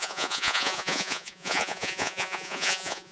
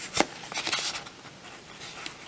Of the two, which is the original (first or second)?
second